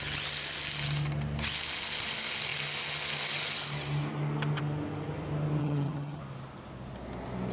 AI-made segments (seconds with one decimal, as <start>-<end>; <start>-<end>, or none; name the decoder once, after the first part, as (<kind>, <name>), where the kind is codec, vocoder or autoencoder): 5.6-6.2 (vocoder, HiFi-GAN)